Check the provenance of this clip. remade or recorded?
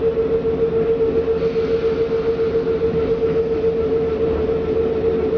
recorded